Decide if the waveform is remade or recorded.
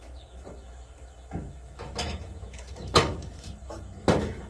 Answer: remade